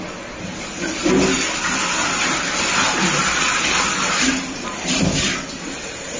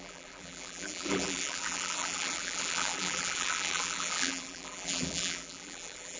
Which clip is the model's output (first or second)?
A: second